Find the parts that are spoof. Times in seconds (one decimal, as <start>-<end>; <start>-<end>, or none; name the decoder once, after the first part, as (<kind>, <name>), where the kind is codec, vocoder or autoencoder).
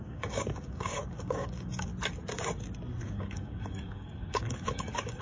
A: 0.0-1.9 (codec, DAC); 3.0-5.2